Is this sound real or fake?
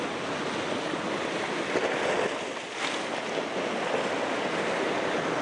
real